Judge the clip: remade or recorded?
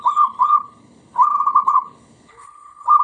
remade